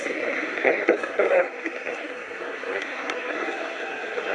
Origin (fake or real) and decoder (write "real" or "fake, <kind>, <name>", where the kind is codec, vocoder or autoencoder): fake, codec, SNAC